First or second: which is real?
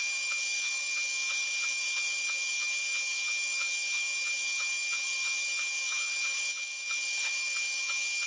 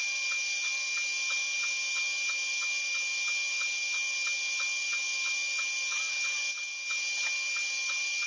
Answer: second